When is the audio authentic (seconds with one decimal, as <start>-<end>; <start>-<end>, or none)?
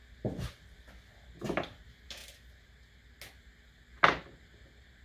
0.0-5.0